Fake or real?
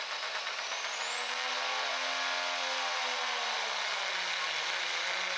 real